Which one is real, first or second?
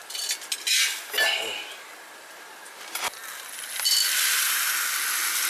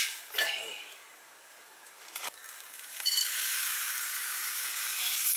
first